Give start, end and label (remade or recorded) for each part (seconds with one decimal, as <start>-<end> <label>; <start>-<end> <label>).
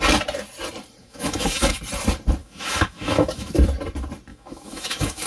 0.0-1.0 recorded; 1.0-1.8 remade; 1.8-2.4 recorded; 2.4-3.5 remade; 3.5-4.3 recorded; 4.3-5.3 remade